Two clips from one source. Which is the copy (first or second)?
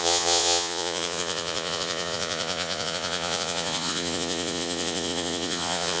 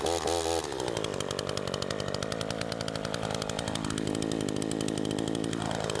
first